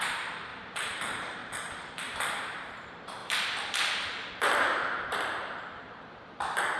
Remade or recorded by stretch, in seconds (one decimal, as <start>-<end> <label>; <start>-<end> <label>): 0.0-0.5 remade; 0.5-1.0 recorded; 1.0-1.4 remade; 1.4-1.9 recorded; 1.9-3.2 remade; 3.2-4.3 recorded; 4.3-6.8 remade